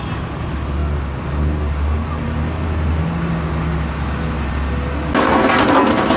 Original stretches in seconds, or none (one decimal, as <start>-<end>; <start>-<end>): 0.0-6.2

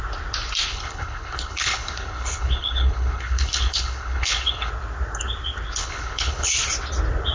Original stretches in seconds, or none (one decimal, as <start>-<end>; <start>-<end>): 0.0-0.7; 4.7-5.8; 6.5-7.3

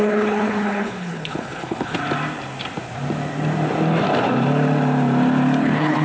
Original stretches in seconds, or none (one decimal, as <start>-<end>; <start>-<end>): 2.0-5.6

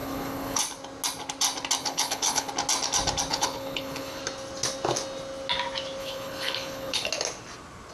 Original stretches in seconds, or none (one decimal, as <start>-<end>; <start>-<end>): 0.6-1.8; 2.5-3.3; 4.2-6.0; 7.1-7.9

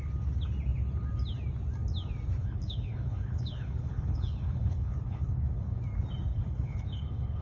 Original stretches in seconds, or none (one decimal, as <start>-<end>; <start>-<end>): 0.0-2.4; 5.8-6.3